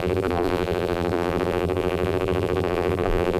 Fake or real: fake